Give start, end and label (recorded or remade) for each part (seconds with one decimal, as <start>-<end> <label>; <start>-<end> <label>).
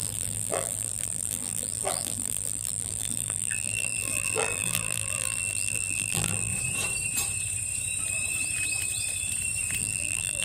0.0-6.5 remade; 6.5-9.8 recorded; 9.8-10.4 remade